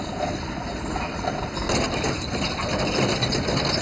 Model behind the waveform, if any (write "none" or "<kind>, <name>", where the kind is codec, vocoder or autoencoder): none